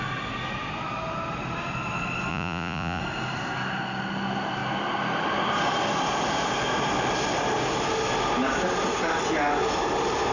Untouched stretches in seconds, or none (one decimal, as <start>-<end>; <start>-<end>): 0.0-2.3; 3.0-10.3